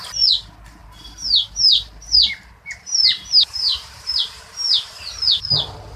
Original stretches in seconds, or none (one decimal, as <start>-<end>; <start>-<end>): 0.0-0.8; 4.4-6.0

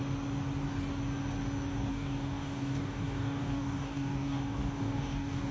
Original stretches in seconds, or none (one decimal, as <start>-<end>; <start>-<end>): 0.0-1.9

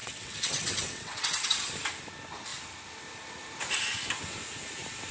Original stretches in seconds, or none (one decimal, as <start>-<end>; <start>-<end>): 1.7-5.1

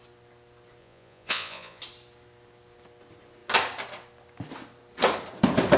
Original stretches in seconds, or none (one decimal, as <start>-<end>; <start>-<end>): 0.0-0.8; 1.8-5.8